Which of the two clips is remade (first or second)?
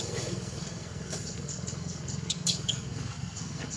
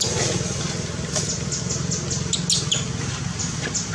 first